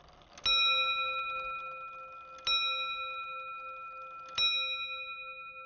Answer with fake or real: real